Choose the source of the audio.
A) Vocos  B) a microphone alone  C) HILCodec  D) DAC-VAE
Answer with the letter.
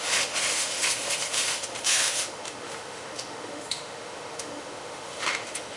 D